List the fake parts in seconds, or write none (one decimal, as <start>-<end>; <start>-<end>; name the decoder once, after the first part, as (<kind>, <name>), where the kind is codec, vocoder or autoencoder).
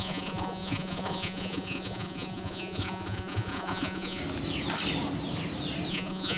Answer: 0.0-4.2 (vocoder, Vocos); 5.9-6.4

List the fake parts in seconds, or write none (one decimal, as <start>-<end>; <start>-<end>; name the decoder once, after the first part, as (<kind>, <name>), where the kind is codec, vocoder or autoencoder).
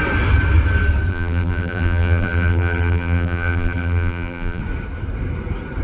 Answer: 1.1-4.6 (vocoder, BigVGAN v2)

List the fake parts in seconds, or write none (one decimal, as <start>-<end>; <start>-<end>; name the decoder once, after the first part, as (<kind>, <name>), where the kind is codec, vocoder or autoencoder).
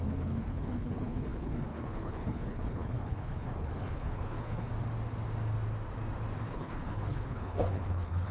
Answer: 0.0-4.7 (codec, HILCodec); 6.5-8.3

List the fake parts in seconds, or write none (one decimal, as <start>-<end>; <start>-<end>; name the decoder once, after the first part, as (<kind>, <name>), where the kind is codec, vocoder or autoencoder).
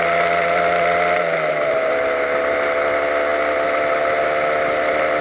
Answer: none